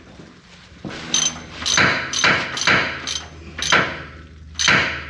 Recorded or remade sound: recorded